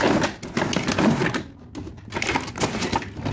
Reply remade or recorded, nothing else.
recorded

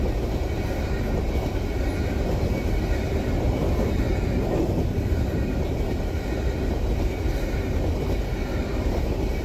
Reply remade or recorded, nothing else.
recorded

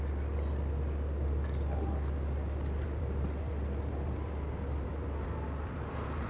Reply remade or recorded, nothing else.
recorded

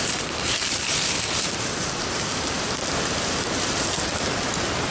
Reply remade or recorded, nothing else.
remade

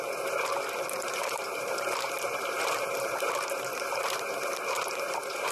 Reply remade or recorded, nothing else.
remade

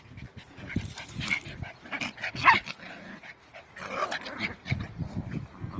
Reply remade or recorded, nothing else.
recorded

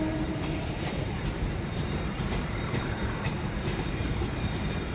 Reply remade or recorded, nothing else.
remade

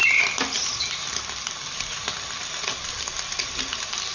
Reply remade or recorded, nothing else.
remade